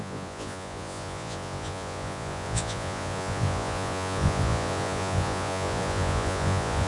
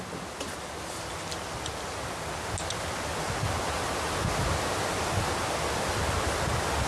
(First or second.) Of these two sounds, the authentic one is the second